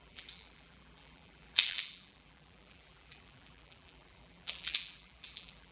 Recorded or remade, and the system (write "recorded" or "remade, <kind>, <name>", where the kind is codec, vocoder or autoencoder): remade, vocoder, BigVGAN v2